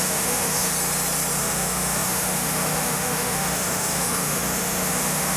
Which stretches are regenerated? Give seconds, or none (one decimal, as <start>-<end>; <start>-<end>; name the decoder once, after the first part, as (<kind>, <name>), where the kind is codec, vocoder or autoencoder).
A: 0.0-0.7 (autoencoder, DAC-VAE); 1.4-5.4